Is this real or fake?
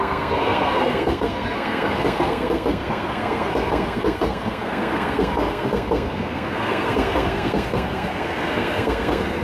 fake